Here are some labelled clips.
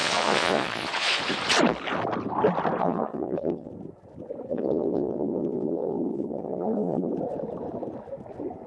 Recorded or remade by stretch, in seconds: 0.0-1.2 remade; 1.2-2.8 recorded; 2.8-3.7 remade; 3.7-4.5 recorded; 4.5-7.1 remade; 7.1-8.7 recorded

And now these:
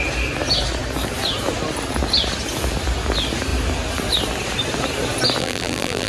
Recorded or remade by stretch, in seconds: 0.0-5.4 recorded; 5.4-6.1 remade